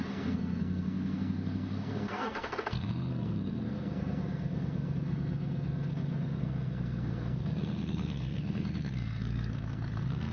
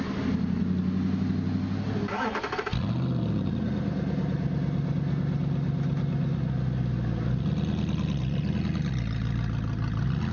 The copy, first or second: first